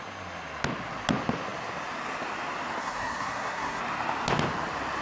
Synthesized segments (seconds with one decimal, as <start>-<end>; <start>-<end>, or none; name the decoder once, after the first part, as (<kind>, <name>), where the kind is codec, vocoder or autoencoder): 2.8-3.8 (codec, SNAC)